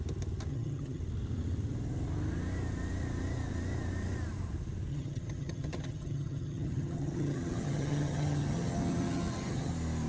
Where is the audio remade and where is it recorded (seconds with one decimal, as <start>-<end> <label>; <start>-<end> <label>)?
0.0-0.5 recorded; 0.5-1.0 remade; 1.0-4.9 recorded; 4.9-9.7 remade; 9.7-10.1 recorded